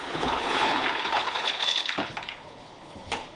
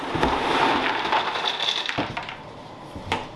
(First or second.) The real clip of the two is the second